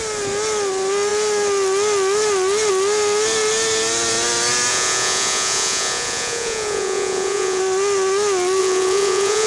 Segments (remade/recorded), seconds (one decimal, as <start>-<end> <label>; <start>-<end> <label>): 0.0-4.7 recorded; 4.7-7.6 remade; 7.6-8.6 recorded; 8.6-9.5 remade